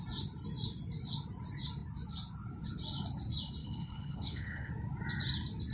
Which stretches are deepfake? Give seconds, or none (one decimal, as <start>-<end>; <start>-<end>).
3.6-4.7